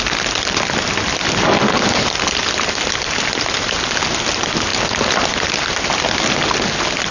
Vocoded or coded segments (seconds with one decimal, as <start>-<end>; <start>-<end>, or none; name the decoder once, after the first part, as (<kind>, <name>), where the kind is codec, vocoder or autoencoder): none